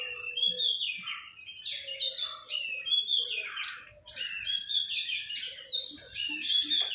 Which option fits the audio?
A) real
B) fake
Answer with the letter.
A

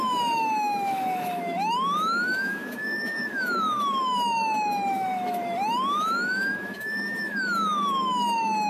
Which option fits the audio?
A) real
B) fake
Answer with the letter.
B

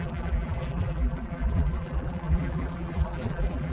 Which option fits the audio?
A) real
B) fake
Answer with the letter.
B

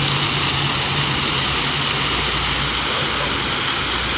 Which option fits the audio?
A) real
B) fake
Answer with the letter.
A